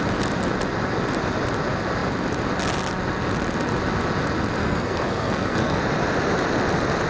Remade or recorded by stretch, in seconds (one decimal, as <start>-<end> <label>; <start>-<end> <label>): 0.0-4.6 recorded; 4.6-5.8 remade; 5.8-7.1 recorded